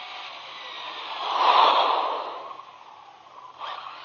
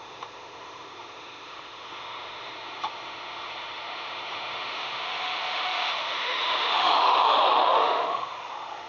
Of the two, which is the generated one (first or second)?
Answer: second